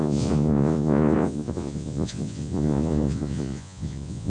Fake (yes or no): yes